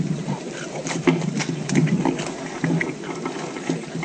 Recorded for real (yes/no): yes